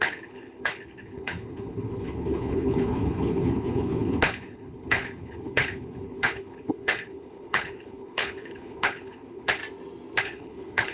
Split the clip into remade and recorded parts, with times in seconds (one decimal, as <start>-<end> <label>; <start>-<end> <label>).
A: 0.0-9.6 remade; 9.6-10.2 recorded; 10.2-10.9 remade